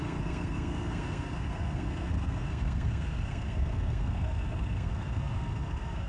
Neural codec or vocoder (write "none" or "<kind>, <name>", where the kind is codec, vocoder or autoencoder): codec, SNAC